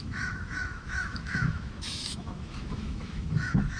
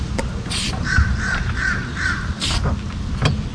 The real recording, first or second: second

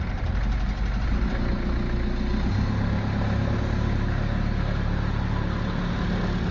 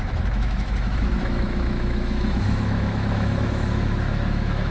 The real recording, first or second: first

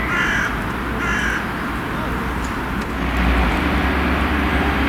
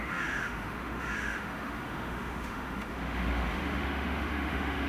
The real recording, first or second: first